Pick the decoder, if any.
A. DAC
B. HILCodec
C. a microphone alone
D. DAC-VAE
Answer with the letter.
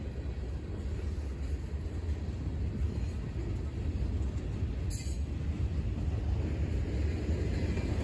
C